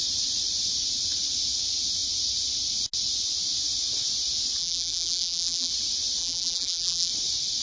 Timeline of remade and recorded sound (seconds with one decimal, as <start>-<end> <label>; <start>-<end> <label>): 0.0-4.6 recorded; 4.6-5.7 remade; 5.7-6.2 recorded; 6.2-7.1 remade; 7.1-7.6 recorded